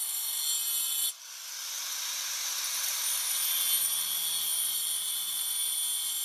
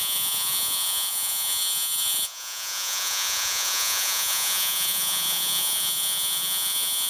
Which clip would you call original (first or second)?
first